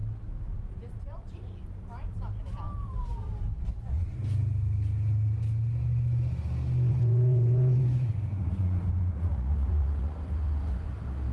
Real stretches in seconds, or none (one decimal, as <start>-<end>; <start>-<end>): 0.0-6.9; 10.9-11.3